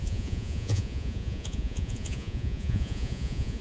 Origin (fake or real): fake